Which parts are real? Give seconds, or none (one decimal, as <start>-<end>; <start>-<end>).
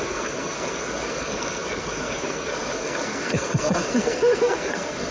none